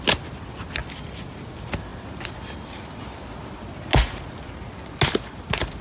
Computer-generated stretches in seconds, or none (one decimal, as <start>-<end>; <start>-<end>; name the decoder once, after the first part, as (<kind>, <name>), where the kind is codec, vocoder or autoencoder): none